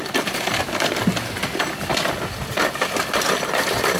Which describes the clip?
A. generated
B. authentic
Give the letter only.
B